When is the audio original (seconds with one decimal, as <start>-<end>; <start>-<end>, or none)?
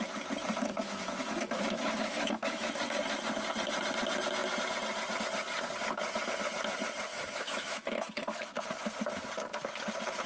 0.0-0.8; 2.7-7.1; 8.6-10.3